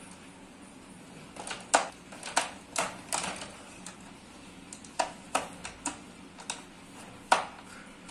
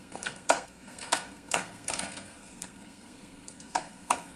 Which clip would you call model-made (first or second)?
second